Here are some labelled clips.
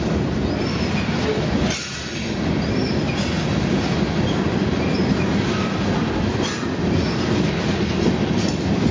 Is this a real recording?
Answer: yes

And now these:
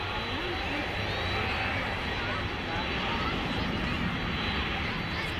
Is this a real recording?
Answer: yes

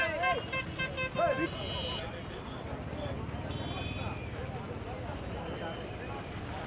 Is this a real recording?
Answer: yes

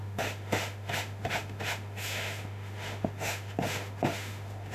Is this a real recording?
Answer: no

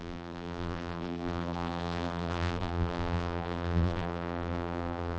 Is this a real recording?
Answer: no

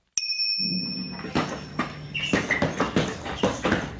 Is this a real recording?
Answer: yes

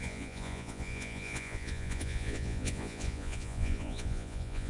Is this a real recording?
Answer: no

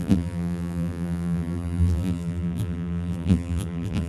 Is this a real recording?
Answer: no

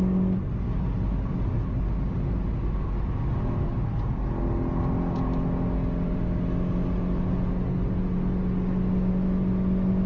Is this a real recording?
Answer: yes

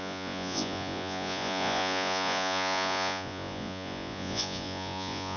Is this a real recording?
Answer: no